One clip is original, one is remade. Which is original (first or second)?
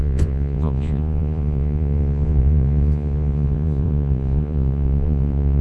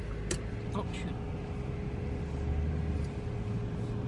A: second